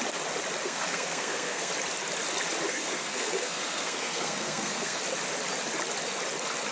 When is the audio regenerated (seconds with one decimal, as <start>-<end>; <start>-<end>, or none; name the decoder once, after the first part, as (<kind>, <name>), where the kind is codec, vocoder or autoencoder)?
0.6-1.7 (codec, SNAC); 2.7-5.0